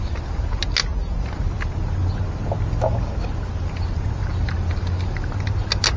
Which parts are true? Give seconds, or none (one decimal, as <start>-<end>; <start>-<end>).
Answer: 0.0-6.0